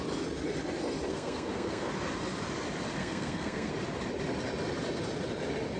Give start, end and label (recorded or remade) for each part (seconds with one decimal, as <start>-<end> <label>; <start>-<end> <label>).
0.0-1.1 recorded; 1.1-1.9 remade; 1.9-3.0 recorded; 3.0-3.7 remade; 3.7-5.8 recorded